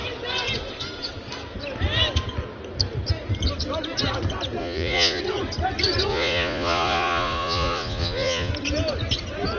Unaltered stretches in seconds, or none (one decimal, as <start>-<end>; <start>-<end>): 0.0-4.6; 5.2-6.1; 8.5-9.6